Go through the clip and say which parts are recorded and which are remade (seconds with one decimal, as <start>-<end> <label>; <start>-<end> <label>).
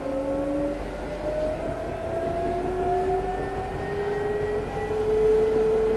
0.0-6.0 recorded